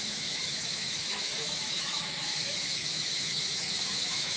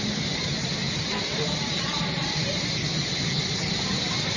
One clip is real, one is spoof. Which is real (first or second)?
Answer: second